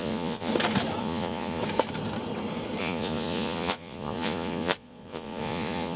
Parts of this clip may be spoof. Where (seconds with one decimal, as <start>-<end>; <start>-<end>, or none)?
0.0-0.5; 1.0-1.6; 2.8-6.0